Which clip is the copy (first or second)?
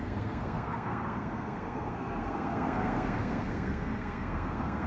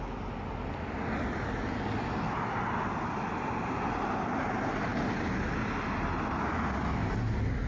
first